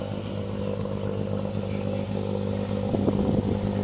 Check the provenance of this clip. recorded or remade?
recorded